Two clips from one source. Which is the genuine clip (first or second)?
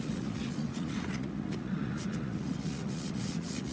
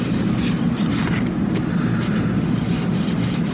second